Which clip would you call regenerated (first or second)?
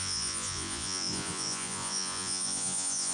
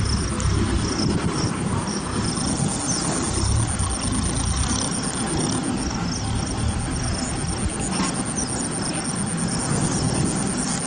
first